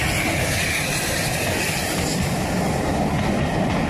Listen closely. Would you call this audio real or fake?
real